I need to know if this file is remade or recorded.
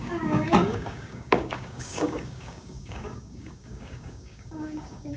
remade